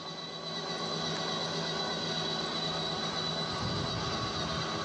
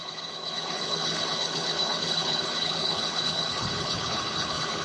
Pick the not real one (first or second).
second